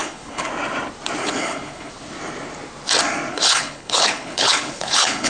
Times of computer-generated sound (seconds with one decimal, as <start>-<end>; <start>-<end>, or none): 0.0-0.5; 1.2-1.9; 3.3-5.3